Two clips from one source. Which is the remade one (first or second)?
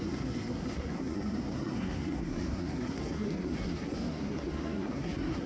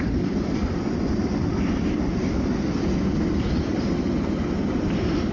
first